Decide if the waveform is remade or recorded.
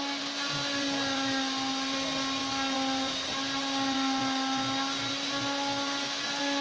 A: recorded